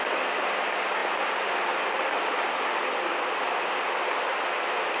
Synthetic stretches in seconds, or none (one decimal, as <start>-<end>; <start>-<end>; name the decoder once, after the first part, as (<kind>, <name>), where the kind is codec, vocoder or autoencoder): none